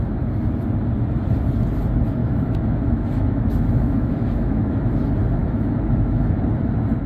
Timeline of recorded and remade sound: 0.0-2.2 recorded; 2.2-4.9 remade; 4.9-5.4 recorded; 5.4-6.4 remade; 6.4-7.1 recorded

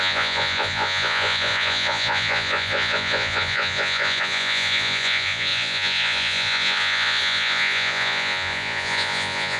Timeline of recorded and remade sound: 0.0-9.6 remade